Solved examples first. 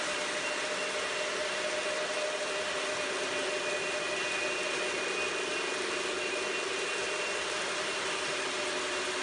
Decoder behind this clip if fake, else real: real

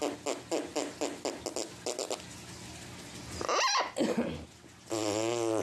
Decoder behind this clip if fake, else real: real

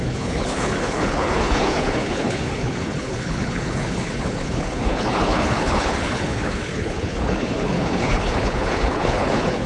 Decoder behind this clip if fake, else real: fake, codec, HILCodec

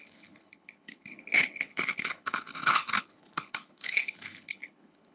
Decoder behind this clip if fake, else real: fake, codec, HILCodec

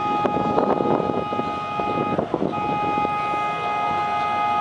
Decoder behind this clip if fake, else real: real